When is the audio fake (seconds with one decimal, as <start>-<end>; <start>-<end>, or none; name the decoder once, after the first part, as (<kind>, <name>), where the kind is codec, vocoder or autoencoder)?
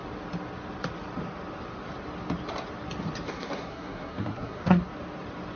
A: 3.3-4.8 (codec, SNAC)